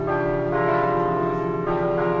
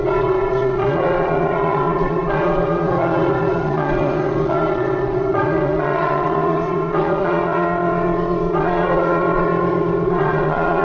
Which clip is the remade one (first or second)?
second